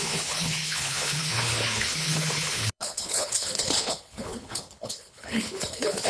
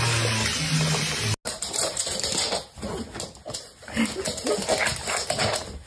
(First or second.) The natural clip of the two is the second